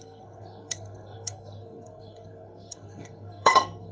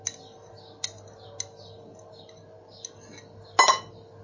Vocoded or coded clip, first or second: first